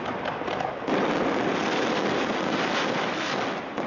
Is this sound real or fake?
real